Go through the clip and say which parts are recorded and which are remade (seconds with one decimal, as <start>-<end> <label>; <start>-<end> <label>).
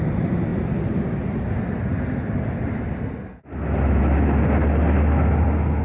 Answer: 0.0-5.8 recorded